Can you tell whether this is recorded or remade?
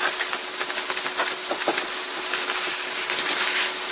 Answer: recorded